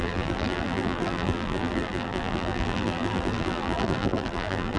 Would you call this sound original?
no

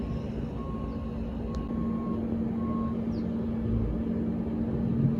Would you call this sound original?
yes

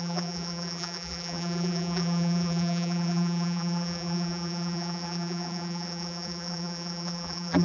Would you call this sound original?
no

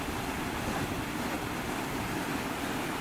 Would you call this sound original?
no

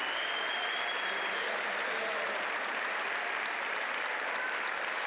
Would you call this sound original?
no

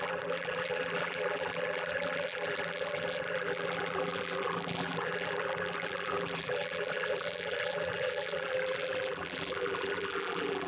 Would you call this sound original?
no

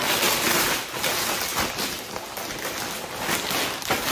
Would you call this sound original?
yes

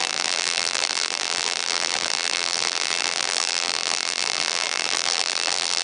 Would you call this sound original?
no